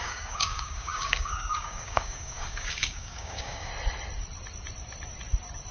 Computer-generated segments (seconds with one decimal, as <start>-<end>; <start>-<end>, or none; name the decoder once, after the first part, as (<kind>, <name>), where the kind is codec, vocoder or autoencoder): 0.0-3.7 (codec, DAC)